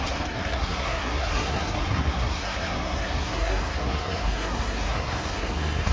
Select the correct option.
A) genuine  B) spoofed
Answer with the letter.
B